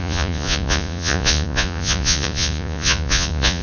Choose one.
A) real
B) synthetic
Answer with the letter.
B